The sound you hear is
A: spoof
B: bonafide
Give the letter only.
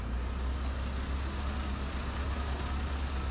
B